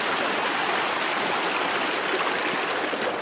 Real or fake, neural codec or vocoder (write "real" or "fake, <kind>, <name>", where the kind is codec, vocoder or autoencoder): real